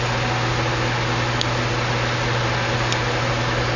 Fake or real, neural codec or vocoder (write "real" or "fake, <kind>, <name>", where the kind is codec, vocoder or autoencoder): real